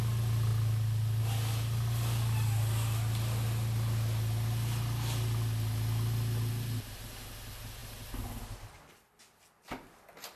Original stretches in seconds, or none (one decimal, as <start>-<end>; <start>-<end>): 0.0-10.4